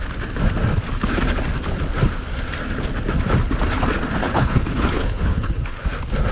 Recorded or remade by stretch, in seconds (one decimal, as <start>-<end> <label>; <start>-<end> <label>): 0.0-4.2 recorded; 4.2-5.8 remade; 5.8-6.3 recorded